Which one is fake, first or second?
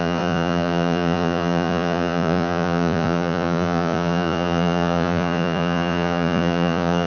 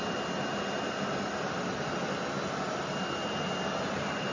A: first